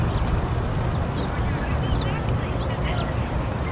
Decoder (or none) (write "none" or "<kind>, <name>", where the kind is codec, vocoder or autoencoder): none